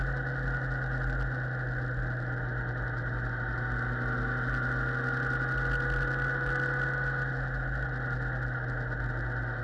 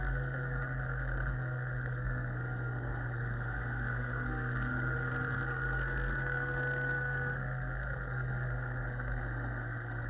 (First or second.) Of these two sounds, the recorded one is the first